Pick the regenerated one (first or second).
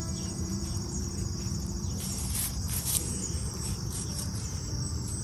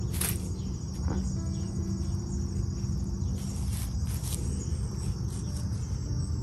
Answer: first